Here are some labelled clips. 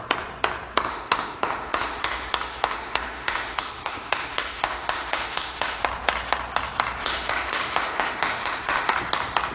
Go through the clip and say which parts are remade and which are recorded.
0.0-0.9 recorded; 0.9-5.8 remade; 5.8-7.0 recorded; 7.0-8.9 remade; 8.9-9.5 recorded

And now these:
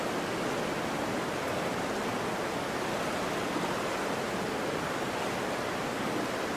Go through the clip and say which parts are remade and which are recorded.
0.0-6.6 recorded

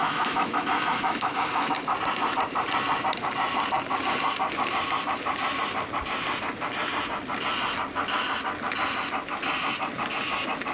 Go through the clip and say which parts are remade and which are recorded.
0.0-1.7 remade; 1.7-10.7 recorded